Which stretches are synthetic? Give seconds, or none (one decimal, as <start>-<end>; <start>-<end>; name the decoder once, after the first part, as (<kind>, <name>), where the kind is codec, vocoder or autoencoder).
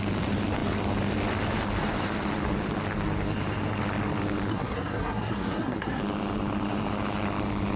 4.5-6.0 (codec, SNAC)